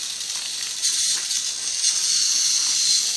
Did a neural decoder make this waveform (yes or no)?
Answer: no